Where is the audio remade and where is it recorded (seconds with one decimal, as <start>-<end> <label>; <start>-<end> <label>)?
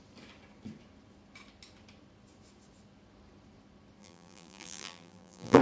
0.0-4.0 recorded; 4.0-5.6 remade